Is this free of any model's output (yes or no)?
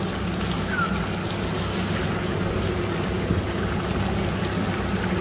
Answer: yes